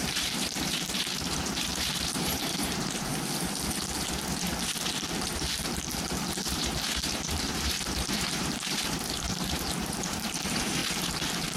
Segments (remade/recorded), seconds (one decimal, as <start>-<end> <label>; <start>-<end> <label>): 0.0-3.1 remade; 3.1-6.3 recorded; 6.3-10.8 remade; 10.8-11.6 recorded